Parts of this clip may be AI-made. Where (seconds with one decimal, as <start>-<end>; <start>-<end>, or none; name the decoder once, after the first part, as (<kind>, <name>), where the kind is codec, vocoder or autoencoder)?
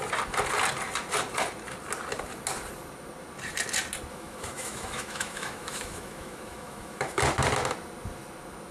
4.1-7.2 (autoencoder, DAC-VAE)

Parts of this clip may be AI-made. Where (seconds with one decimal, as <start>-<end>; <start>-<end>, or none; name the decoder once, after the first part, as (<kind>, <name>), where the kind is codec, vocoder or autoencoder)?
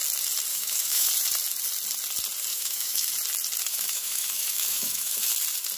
0.5-1.1 (autoencoder, DAC-VAE); 2.5-3.1; 3.7-5.3